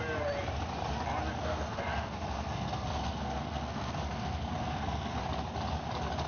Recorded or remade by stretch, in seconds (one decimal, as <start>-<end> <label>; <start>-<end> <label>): 0.0-1.4 recorded; 1.4-5.2 remade; 5.2-6.3 recorded